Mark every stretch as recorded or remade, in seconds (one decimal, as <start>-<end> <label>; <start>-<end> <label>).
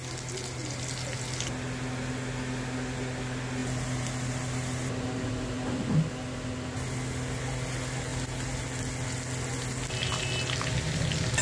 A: 0.0-11.4 recorded